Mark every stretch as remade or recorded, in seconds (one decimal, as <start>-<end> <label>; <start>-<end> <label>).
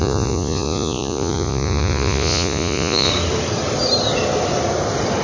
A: 0.0-3.1 remade; 3.1-5.2 recorded